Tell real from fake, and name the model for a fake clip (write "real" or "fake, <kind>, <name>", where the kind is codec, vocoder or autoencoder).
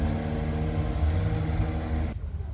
real